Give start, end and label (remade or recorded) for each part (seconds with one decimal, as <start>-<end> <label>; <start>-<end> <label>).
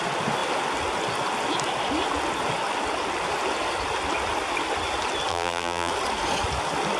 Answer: 0.0-5.3 recorded; 5.3-5.9 remade; 5.9-7.0 recorded